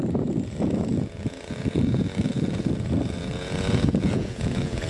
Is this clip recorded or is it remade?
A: remade